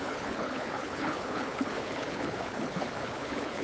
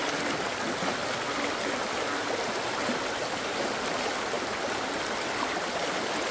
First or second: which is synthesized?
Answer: first